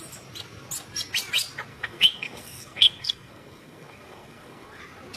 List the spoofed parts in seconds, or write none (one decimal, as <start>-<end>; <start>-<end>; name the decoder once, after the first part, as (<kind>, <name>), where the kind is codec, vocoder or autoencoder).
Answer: 1.7-4.8 (codec, SNAC)